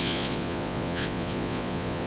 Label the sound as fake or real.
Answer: fake